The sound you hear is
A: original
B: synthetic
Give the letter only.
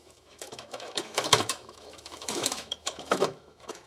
B